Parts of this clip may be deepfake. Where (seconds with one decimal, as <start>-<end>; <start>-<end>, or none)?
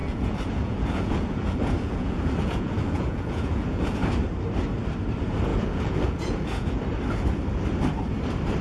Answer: 0.0-4.0; 5.5-6.8